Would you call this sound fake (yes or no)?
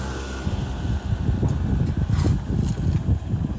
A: no